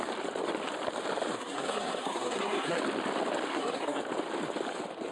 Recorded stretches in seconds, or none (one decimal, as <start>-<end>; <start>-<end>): 0.0-1.4; 2.8-3.5; 4.0-5.1